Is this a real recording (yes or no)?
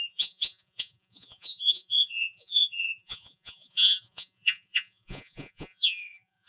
no